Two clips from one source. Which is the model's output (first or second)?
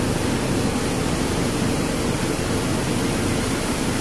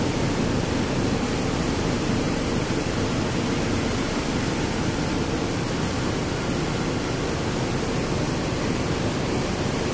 second